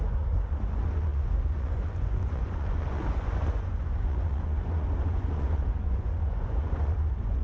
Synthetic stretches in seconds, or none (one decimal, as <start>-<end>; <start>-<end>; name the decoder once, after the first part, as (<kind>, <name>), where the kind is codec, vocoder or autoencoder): 0.0-7.4 (vocoder, Vocos)